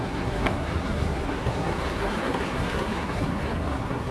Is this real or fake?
fake